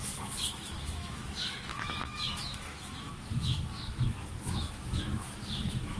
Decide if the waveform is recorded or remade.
remade